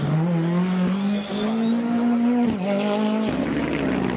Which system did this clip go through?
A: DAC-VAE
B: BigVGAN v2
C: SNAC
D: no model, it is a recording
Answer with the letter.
D